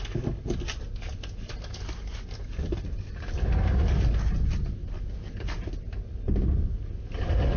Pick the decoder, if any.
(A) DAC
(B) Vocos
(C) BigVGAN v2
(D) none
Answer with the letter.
D